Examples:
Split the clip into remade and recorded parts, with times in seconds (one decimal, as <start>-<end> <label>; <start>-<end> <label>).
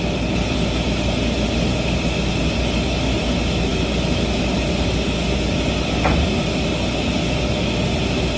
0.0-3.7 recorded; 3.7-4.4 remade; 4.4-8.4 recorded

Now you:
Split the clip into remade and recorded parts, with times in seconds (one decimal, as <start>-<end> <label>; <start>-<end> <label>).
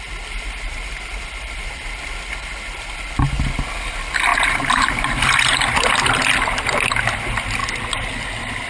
0.0-4.3 recorded; 4.3-6.2 remade; 6.2-8.7 recorded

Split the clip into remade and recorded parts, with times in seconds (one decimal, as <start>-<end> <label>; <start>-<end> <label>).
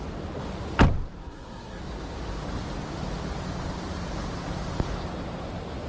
0.0-1.2 recorded; 1.2-1.8 remade; 1.8-5.9 recorded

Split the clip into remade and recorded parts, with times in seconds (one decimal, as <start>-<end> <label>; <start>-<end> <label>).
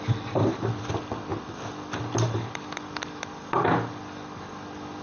0.0-5.0 recorded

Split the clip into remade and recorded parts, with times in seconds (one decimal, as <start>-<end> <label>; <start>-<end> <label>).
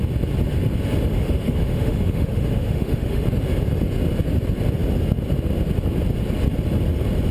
0.0-1.1 recorded; 1.1-3.2 remade; 3.2-7.3 recorded